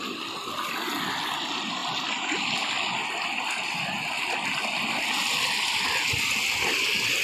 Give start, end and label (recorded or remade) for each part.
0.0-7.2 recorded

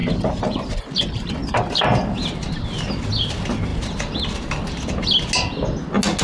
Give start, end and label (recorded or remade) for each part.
0.0-1.3 remade; 1.3-6.2 recorded

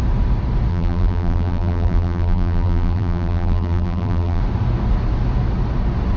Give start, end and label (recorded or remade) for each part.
0.0-0.7 recorded; 0.7-4.4 remade; 4.4-6.2 recorded

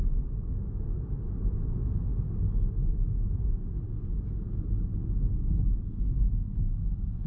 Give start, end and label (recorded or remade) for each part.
0.0-7.3 recorded

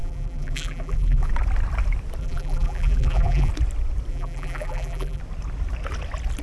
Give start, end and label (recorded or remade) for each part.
0.0-1.3 remade; 1.3-2.2 recorded; 2.2-3.5 remade; 3.5-4.1 recorded; 4.1-5.2 remade; 5.2-6.4 recorded

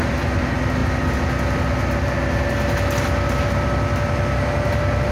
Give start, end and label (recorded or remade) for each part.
0.0-5.1 recorded

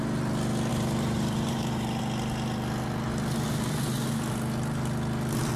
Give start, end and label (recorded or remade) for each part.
0.0-0.7 recorded; 0.7-2.0 remade; 2.0-5.6 recorded